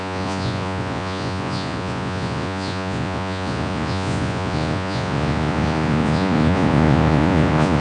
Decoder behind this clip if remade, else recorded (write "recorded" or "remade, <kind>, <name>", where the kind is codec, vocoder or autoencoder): remade, vocoder, Vocos